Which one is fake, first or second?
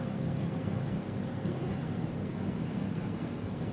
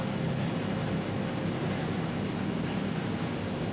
first